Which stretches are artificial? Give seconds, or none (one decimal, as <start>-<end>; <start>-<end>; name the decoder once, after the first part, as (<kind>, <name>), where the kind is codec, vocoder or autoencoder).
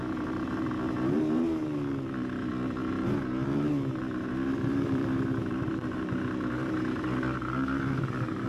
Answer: 0.0-8.5 (vocoder, BigVGAN v2)